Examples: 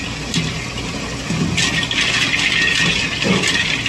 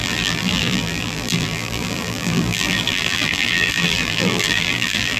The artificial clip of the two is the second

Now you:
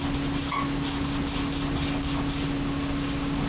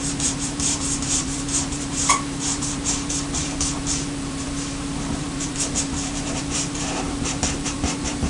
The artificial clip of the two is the second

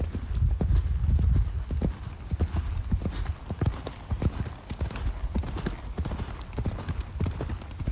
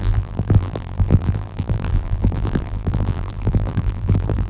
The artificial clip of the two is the second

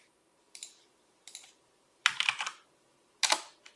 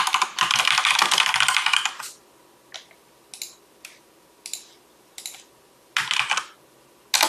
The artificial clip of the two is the first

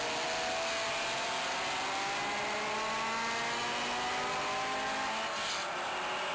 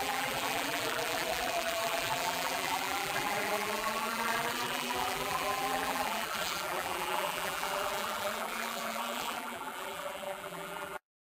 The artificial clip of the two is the second